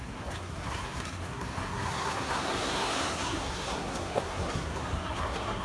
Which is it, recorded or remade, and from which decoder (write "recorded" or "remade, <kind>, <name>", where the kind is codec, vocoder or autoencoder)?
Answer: remade, codec, SNAC